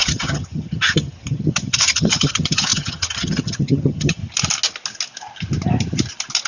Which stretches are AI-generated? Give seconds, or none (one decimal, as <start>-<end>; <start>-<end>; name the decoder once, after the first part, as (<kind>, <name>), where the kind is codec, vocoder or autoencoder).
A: 0.0-4.2 (vocoder, HiFi-GAN)